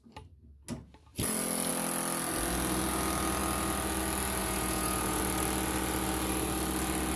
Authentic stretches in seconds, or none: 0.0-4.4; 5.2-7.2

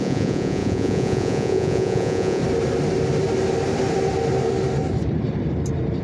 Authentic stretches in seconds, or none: 2.4-6.0

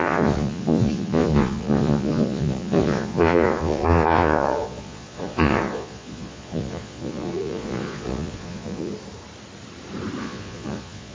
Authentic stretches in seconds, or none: 8.9-10.2

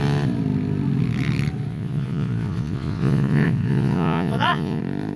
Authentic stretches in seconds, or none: 0.0-1.7; 4.8-5.2

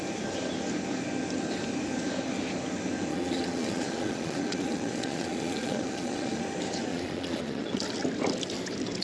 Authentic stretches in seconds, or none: 0.0-3.1; 6.4-6.9; 7.8-9.0

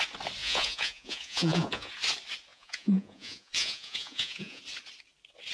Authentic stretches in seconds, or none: 0.0-0.4; 1.9-2.5; 4.6-5.5

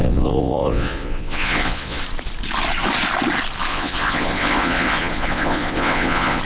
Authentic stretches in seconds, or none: 2.0-3.7

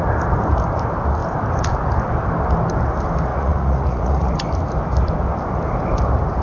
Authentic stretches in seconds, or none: 0.0-3.3; 4.3-6.4